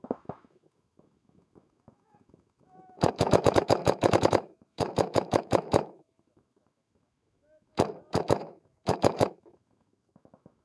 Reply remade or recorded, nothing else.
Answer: remade